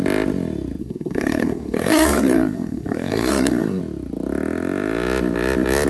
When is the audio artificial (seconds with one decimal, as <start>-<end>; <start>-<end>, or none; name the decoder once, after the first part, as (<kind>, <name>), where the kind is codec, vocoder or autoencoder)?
0.8-3.8 (codec, SNAC)